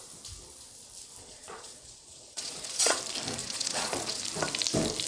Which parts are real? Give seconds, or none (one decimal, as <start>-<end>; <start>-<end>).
0.0-1.2; 3.0-3.4; 4.2-5.1